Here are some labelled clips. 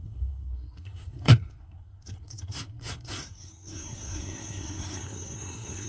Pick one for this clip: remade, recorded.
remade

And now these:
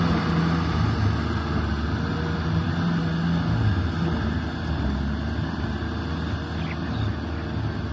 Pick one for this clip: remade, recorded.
recorded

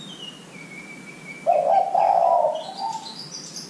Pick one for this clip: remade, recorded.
recorded